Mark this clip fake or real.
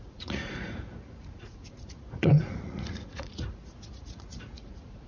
fake